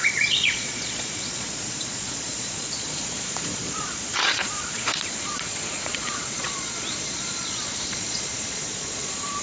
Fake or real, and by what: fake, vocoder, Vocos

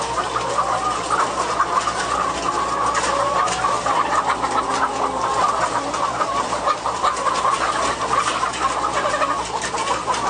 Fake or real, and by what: real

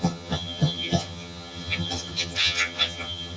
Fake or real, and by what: fake, vocoder, HiFi-GAN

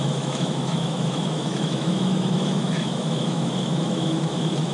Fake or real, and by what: fake, autoencoder, DAC-VAE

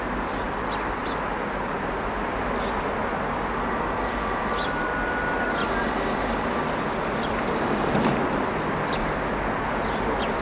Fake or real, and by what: real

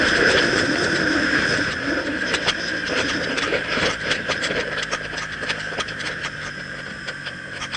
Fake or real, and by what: fake, vocoder, BigVGAN v2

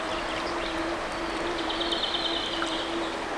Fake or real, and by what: real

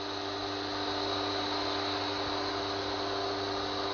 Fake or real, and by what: real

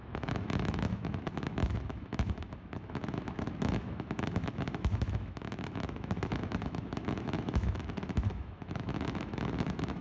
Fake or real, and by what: fake, autoencoder, DAC-VAE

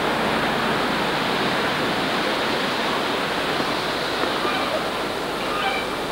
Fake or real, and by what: real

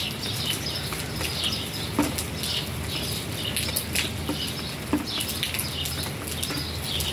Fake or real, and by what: real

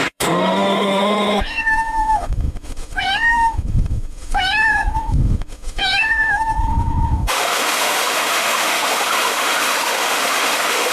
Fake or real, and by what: fake, autoencoder, DAC-VAE